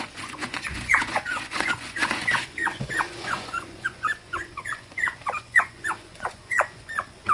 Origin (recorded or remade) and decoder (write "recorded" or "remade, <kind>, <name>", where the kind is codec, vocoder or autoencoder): remade, vocoder, Vocos